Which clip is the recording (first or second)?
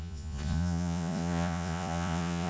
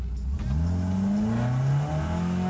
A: second